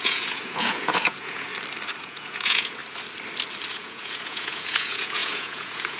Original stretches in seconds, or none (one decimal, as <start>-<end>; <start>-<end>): 1.5-2.0; 2.8-3.7